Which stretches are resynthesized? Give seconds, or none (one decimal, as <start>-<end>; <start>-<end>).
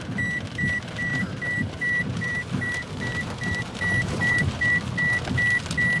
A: 1.1-4.7